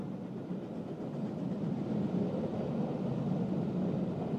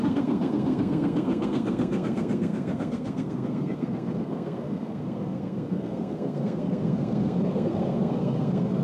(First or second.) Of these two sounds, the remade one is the second